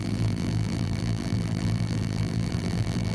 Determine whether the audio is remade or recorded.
remade